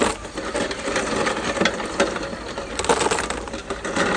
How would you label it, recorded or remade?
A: recorded